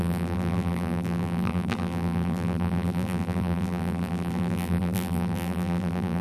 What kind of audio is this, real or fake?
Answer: fake